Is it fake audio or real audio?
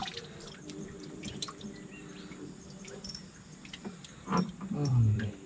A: fake